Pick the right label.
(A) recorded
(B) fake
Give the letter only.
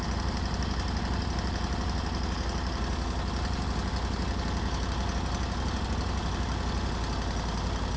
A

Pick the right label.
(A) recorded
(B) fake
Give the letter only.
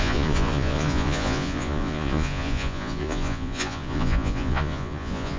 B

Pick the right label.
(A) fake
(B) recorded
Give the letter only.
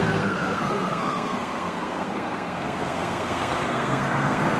A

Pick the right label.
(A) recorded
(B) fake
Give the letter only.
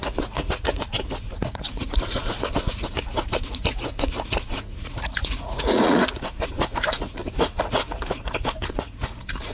B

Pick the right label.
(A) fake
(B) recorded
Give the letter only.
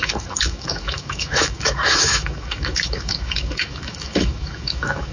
A